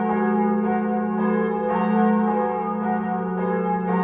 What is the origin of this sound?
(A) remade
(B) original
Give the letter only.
B